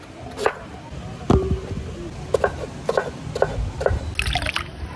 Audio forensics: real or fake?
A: real